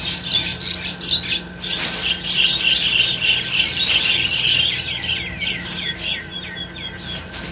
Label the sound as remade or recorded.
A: recorded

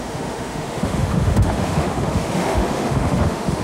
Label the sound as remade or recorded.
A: remade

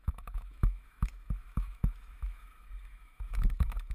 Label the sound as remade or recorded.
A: remade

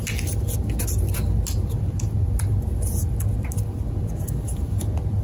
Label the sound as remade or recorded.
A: recorded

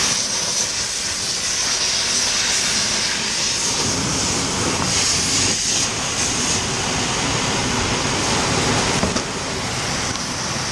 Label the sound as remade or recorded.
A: recorded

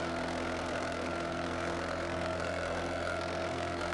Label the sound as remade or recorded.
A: remade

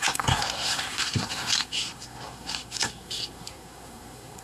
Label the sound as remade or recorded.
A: remade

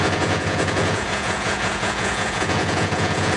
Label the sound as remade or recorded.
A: remade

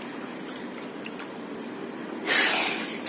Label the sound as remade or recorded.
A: recorded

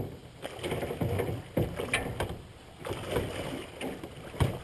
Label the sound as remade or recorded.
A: recorded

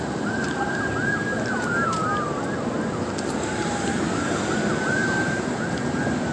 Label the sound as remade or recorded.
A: recorded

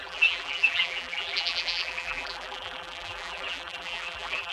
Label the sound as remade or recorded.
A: remade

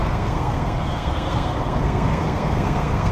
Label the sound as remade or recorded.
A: remade